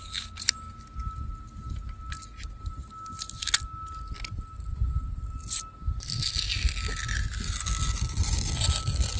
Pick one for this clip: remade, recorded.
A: recorded